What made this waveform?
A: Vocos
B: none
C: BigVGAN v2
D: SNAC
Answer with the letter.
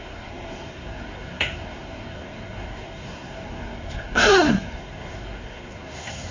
D